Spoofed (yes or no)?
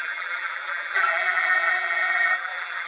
yes